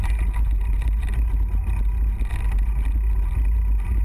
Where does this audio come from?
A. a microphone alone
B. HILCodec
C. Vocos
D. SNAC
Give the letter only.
A